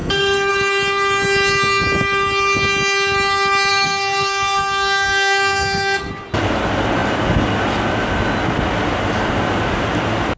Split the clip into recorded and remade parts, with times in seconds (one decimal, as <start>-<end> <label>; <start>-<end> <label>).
0.0-0.5 remade; 0.5-3.7 recorded; 3.7-6.1 remade; 6.1-10.4 recorded